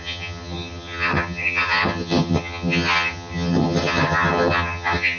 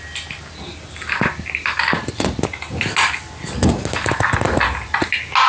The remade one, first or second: first